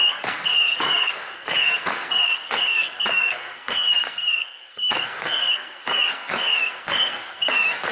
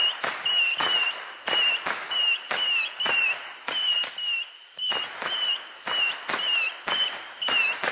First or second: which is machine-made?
first